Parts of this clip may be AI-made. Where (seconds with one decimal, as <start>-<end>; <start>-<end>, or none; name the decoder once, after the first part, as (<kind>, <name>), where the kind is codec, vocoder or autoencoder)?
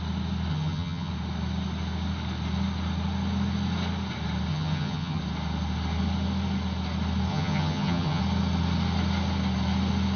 0.5-1.1 (vocoder, HiFi-GAN); 4.5-5.2; 7.3-8.2